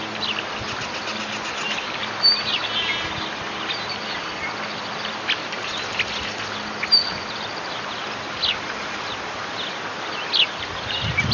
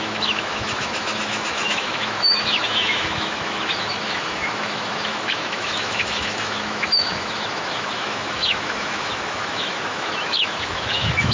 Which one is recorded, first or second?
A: first